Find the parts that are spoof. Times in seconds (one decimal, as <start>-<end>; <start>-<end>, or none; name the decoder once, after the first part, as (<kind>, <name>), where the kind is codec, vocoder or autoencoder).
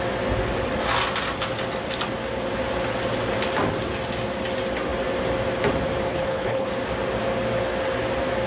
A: 6.1-6.7 (codec, HILCodec)